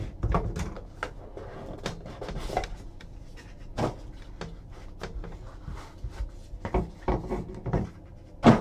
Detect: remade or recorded recorded